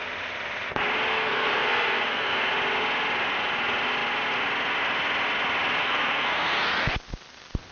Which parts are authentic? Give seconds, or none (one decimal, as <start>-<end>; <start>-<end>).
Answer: 0.0-1.1; 2.5-5.8; 6.7-7.7